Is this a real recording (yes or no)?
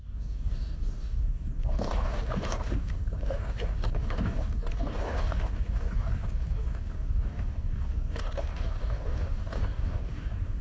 no